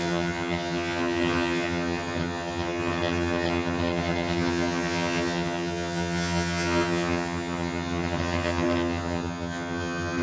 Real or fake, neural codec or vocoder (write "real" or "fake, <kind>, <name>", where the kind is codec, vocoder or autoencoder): fake, vocoder, HiFi-GAN